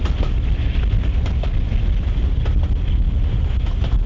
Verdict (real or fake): real